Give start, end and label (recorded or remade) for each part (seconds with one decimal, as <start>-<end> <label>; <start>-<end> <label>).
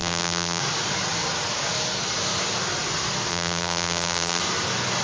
0.0-0.6 remade; 0.6-3.3 recorded; 3.3-4.4 remade; 4.4-5.0 recorded